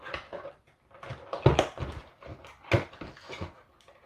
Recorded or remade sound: recorded